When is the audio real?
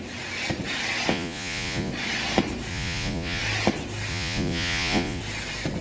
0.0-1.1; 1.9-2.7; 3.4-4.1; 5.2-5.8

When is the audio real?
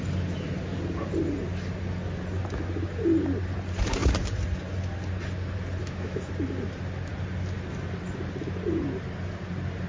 0.0-5.8; 6.3-9.9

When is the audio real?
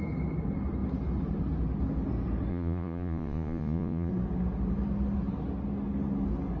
0.0-2.5; 4.1-6.6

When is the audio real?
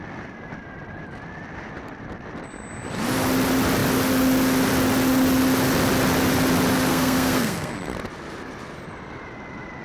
0.0-6.9; 7.7-9.8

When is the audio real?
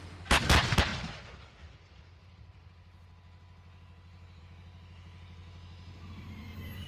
0.0-6.9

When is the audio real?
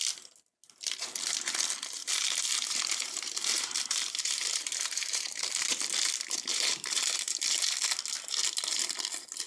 0.0-2.0; 5.8-6.5; 7.3-9.5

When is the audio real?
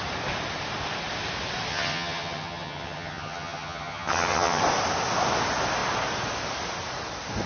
0.0-1.7; 4.6-7.5